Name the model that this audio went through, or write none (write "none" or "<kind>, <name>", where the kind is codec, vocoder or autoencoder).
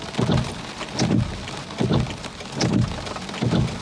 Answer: none